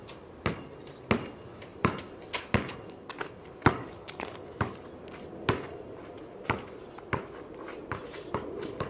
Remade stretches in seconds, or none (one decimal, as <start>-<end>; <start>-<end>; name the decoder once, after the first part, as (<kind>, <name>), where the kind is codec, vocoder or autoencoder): 3.8-4.8 (codec, DAC)